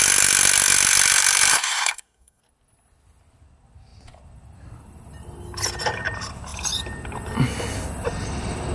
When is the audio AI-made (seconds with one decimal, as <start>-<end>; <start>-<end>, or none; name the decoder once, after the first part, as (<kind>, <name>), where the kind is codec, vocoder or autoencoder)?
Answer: 1.5-2.4 (codec, SNAC)